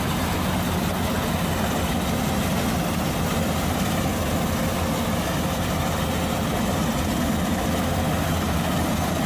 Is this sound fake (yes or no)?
no